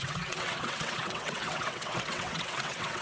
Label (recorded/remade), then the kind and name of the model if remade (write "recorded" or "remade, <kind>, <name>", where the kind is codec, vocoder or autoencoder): remade, vocoder, WaveNeXt